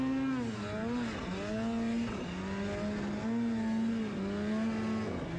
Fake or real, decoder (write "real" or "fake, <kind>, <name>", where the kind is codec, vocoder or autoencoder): real